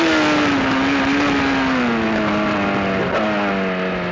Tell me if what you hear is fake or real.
real